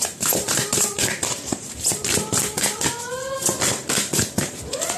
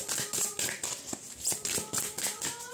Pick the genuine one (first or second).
second